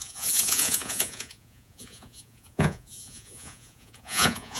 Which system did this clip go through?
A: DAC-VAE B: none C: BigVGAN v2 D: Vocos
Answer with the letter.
D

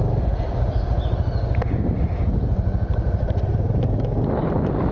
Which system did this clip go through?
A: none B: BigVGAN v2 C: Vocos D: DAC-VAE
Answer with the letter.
A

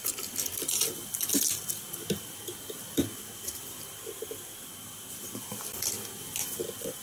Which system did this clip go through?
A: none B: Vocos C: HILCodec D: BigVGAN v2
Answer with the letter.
A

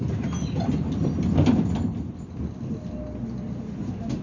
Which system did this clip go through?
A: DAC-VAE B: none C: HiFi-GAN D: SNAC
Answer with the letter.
B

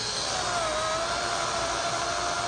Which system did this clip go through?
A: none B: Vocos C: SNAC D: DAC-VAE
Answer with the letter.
A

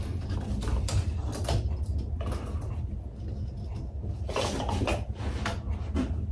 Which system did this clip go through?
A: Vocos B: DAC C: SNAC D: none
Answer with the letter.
D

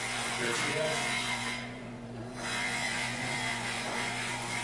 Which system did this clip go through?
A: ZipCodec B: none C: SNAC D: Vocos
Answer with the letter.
D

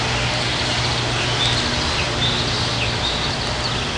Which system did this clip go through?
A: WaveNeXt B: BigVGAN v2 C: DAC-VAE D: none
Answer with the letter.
D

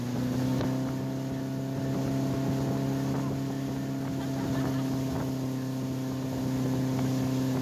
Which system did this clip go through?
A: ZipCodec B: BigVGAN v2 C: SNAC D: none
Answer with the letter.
D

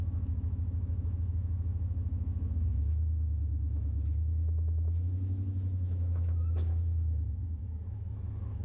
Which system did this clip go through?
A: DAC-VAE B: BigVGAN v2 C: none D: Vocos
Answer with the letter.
A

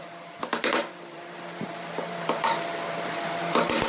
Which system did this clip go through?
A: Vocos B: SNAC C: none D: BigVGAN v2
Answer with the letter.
D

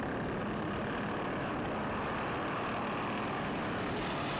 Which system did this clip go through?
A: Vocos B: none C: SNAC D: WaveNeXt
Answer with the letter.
B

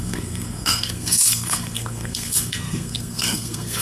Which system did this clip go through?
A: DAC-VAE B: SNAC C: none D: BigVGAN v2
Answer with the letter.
B